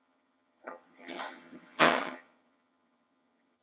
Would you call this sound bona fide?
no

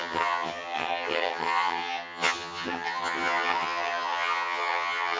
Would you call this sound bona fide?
no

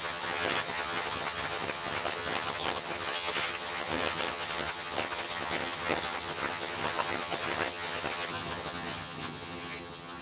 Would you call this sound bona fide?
no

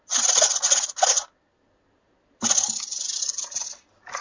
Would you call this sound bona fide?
yes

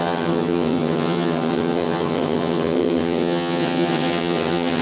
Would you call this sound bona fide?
no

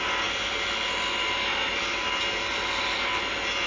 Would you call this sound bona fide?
yes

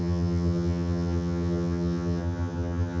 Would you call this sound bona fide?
no